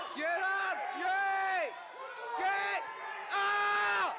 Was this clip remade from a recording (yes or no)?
no